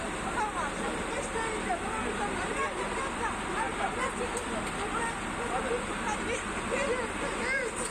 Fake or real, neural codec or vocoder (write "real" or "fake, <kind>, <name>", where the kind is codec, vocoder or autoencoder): real